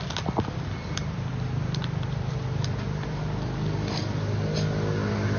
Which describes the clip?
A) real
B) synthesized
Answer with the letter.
A